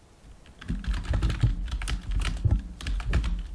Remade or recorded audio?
recorded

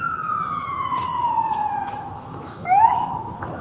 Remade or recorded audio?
remade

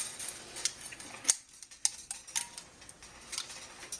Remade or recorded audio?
recorded